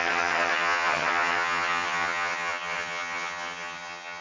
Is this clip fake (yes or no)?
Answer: yes